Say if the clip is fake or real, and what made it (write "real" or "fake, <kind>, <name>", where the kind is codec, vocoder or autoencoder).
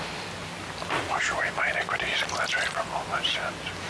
real